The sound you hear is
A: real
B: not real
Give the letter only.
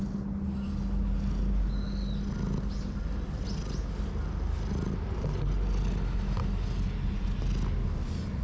A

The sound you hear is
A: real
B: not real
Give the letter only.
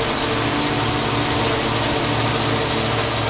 A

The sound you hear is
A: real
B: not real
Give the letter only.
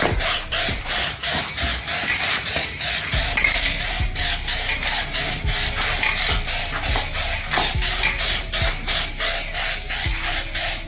A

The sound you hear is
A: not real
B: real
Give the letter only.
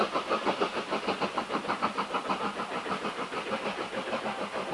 B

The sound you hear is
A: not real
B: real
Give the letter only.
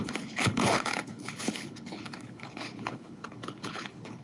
A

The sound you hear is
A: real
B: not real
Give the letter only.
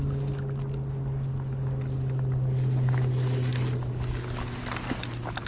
A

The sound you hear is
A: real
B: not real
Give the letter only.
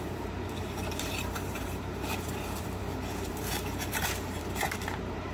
B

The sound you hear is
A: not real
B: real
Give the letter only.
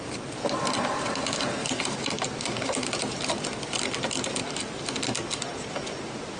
B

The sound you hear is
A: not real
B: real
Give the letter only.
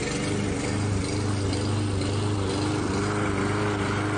B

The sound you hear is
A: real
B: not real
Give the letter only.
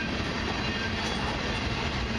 A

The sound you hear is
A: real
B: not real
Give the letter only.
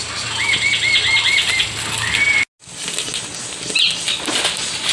A